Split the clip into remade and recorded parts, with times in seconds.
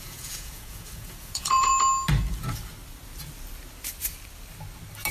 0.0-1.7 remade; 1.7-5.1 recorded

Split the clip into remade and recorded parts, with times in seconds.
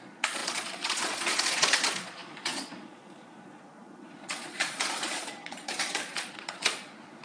0.0-7.2 remade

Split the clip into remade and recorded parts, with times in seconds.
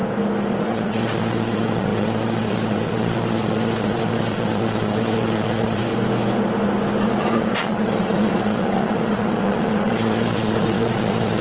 0.0-0.6 recorded; 0.6-5.8 remade; 5.8-7.2 recorded; 7.2-11.4 remade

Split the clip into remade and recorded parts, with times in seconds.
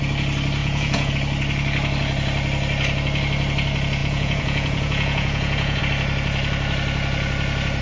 0.0-0.6 recorded; 0.6-1.1 remade; 1.1-4.0 recorded; 4.0-5.8 remade; 5.8-7.8 recorded